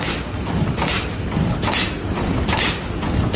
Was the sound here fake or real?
real